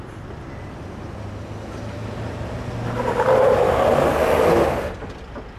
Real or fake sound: real